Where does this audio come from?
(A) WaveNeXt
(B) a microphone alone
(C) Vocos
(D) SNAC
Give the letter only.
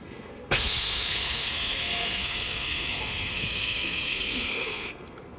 D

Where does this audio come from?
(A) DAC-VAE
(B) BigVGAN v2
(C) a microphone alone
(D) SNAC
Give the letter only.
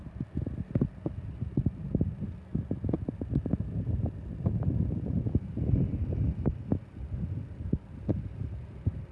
C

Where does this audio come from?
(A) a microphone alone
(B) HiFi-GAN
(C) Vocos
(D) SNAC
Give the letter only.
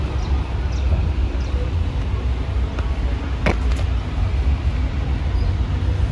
A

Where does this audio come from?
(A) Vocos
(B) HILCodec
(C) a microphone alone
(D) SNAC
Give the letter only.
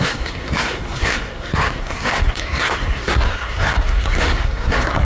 D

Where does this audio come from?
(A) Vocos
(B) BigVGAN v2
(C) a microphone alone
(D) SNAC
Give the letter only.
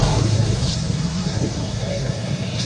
D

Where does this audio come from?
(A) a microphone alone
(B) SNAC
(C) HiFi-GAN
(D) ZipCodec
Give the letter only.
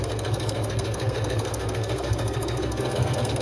B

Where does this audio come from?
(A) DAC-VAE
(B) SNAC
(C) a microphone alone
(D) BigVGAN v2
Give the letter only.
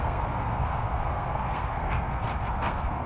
B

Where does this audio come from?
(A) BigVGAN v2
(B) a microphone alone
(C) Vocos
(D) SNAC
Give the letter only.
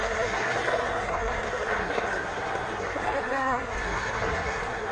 D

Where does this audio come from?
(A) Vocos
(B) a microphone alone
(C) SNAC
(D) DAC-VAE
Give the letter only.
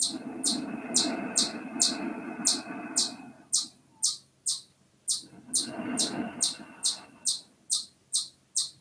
B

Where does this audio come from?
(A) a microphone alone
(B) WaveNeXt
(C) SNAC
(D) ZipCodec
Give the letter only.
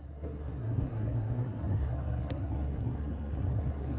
C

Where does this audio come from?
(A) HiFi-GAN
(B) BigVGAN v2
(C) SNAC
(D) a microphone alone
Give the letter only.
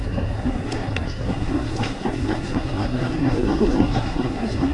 C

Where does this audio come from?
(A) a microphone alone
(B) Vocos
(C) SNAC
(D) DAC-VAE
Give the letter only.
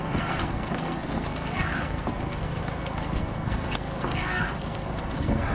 C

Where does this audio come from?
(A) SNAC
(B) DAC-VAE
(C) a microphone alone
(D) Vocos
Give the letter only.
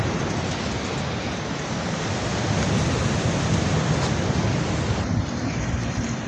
C